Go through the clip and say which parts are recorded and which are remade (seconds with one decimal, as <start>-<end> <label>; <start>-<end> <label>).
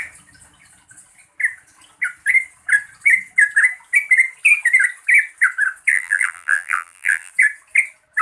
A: 0.0-5.9 recorded; 5.9-7.3 remade; 7.3-8.2 recorded